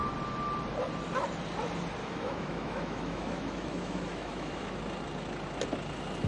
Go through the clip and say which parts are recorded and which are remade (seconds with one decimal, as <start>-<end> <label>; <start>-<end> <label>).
0.0-2.0 recorded; 2.0-4.8 remade; 4.8-6.3 recorded